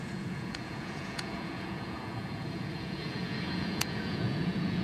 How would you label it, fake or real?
fake